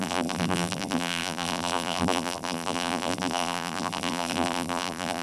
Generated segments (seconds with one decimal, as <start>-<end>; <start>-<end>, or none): 0.0-5.2